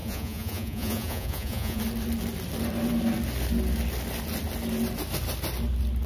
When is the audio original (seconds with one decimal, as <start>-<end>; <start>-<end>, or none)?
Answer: 1.8-6.1